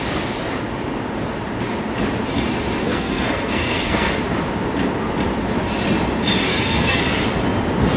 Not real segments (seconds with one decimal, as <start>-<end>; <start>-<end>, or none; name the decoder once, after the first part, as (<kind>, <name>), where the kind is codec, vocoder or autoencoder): 2.8-4.2 (codec, SNAC); 6.5-7.0